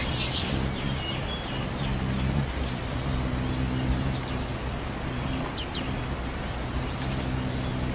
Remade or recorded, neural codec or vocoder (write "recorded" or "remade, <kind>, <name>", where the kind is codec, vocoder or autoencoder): recorded